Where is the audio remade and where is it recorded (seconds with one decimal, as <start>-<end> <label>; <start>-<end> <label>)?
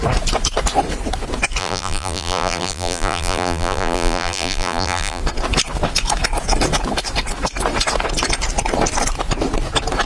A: 0.0-1.6 recorded; 1.6-5.2 remade; 5.2-10.1 recorded